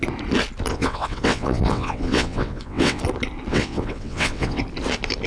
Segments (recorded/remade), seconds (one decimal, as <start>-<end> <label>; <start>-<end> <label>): 0.0-0.7 recorded; 0.7-3.0 remade; 3.0-3.5 recorded; 3.5-4.6 remade; 4.6-5.3 recorded